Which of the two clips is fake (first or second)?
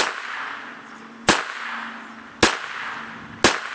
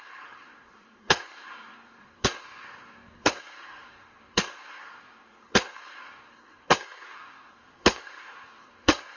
second